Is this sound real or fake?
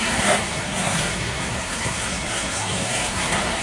fake